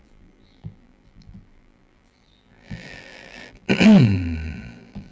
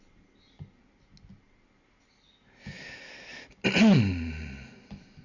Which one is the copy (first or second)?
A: first